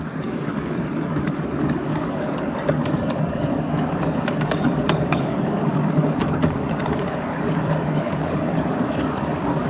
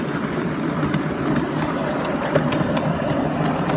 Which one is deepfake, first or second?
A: first